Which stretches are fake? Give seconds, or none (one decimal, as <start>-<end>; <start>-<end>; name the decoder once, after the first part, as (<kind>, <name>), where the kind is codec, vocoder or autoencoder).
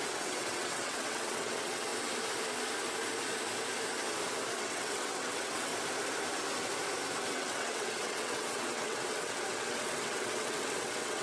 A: 0.0-1.9 (vocoder, WaveNeXt); 4.6-5.7; 7.3-11.2